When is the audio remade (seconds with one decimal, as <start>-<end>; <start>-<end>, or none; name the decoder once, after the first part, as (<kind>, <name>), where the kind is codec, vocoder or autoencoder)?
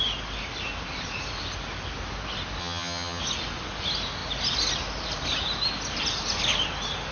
2.6-3.2 (vocoder, HiFi-GAN)